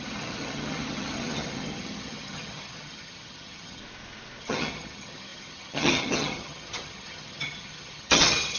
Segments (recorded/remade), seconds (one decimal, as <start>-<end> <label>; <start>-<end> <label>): 0.0-3.8 remade; 3.8-4.4 recorded; 4.4-8.6 remade

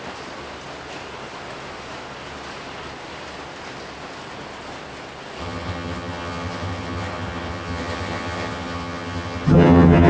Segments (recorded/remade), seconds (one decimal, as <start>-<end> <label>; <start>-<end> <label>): 0.0-5.4 recorded; 5.4-10.1 remade

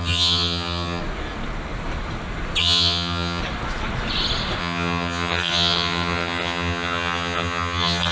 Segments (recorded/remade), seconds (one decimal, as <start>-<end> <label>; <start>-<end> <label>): 0.0-1.0 remade; 1.0-2.6 recorded; 2.6-3.4 remade; 3.4-4.6 recorded; 4.6-8.1 remade

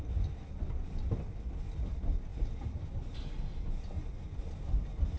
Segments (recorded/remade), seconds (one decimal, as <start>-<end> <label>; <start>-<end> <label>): 0.0-5.2 recorded

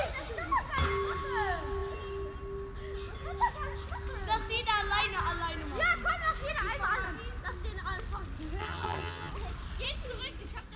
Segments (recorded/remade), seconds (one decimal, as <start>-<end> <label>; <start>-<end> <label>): 0.0-8.6 recorded; 8.6-9.3 remade; 9.3-10.8 recorded

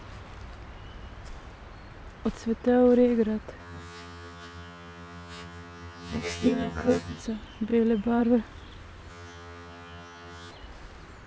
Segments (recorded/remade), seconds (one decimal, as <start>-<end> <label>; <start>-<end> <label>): 0.0-3.6 recorded; 3.6-7.2 remade; 7.2-9.1 recorded; 9.1-10.5 remade; 10.5-11.3 recorded